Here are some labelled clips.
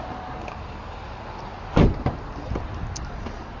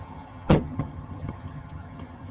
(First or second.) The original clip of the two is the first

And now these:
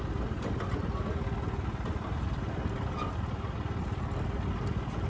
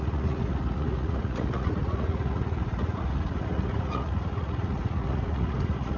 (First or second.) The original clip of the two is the first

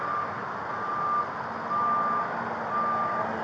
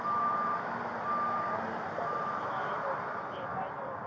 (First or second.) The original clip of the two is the first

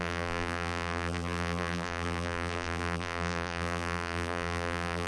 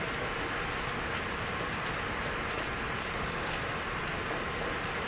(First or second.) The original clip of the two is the second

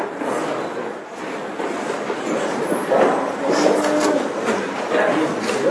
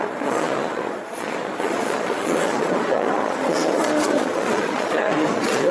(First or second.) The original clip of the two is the first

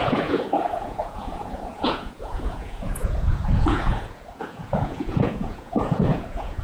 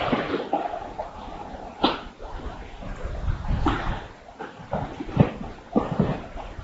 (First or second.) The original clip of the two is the second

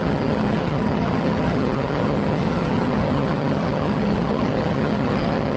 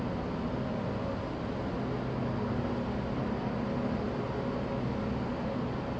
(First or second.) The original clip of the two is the second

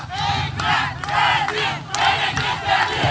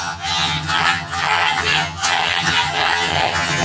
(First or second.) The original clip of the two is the first